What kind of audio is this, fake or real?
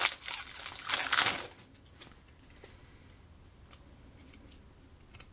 real